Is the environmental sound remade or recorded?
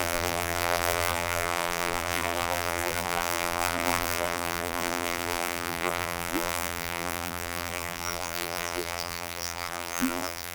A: remade